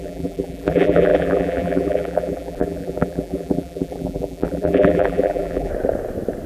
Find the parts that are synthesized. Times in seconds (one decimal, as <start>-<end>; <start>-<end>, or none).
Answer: 0.0-5.7

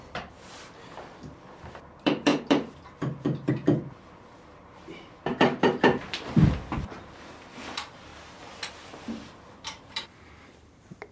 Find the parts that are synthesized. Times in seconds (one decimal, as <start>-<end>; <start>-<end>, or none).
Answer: 0.0-5.3; 6.0-8.1; 8.7-11.1

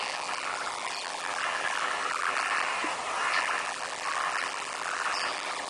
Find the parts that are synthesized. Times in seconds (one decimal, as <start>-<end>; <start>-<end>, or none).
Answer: 0.0-2.7; 3.3-5.7